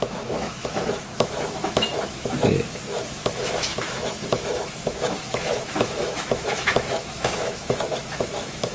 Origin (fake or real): fake